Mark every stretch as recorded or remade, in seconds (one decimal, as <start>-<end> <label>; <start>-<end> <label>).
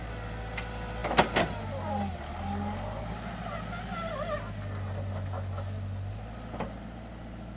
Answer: 0.0-7.6 recorded